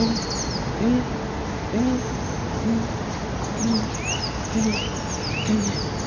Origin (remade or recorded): recorded